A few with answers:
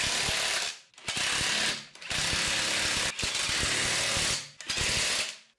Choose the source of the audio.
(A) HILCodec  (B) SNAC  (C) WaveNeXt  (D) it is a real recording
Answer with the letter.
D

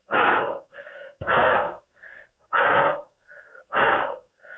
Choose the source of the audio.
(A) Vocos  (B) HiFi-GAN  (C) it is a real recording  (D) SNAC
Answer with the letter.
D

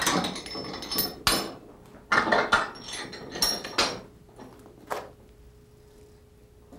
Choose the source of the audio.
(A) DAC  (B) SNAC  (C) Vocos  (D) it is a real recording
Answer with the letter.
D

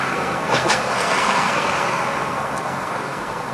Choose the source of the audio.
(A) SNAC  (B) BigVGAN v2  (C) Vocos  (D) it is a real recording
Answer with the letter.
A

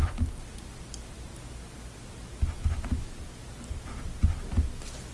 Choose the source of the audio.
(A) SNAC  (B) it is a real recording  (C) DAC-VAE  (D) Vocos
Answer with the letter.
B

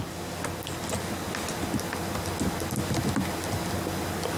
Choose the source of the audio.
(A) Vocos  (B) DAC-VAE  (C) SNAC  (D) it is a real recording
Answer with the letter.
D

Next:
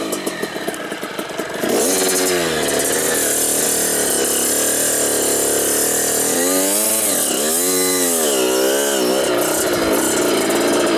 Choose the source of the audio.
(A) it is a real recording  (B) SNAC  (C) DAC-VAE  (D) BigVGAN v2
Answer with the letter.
A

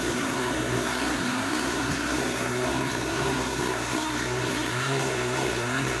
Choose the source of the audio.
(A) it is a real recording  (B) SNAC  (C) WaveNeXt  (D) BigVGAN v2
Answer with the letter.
B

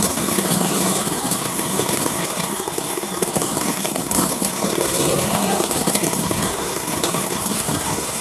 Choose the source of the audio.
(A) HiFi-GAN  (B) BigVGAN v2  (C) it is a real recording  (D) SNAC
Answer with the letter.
D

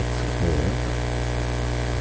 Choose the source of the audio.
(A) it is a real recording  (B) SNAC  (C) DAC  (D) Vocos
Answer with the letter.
A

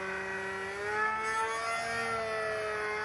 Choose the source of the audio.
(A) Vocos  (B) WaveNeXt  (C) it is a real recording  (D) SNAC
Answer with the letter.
C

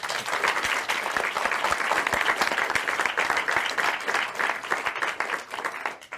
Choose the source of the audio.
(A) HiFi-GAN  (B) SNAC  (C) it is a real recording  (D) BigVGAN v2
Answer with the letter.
C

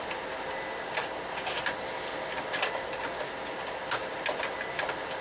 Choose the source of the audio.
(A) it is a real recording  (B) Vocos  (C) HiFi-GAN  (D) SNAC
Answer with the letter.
A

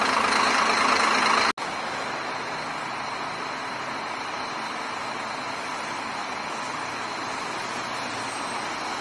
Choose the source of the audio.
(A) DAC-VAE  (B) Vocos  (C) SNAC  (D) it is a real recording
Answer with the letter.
D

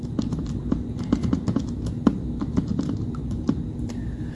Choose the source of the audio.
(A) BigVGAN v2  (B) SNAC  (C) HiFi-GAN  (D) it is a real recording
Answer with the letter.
D